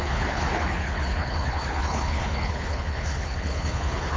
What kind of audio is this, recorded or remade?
remade